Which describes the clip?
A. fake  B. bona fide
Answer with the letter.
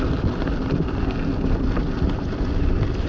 B